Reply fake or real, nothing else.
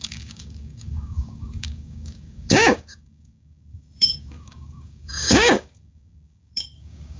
fake